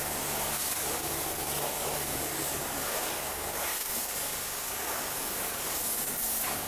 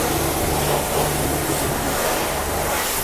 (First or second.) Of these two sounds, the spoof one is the first